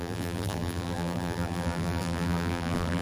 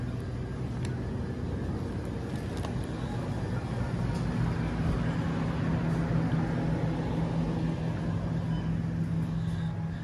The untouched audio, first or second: second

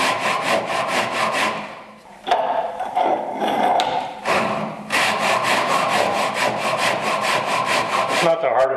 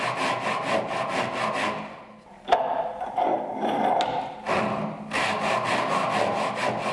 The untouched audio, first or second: second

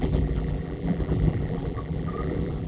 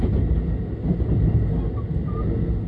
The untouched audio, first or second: second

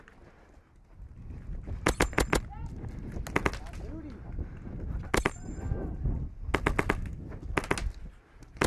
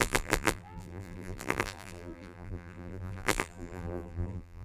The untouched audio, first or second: first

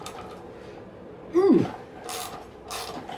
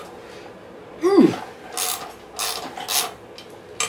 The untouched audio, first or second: second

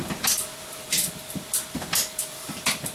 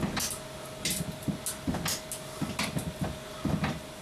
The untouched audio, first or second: second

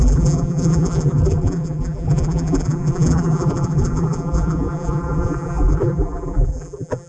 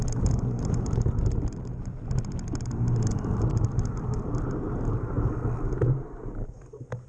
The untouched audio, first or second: second